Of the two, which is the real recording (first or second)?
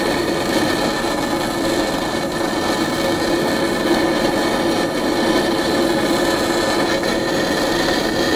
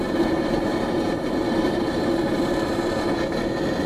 first